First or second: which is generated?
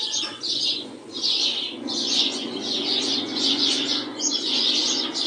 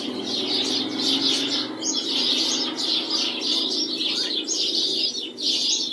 first